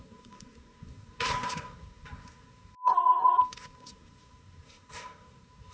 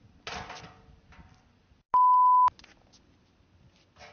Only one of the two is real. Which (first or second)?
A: second